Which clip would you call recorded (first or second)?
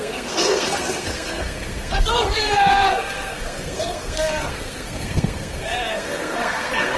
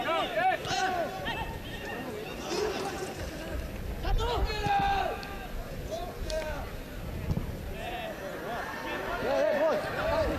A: second